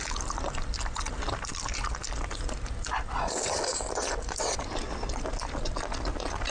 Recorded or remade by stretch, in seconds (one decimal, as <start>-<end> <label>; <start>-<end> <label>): 0.0-6.5 recorded